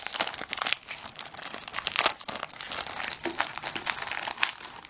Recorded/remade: recorded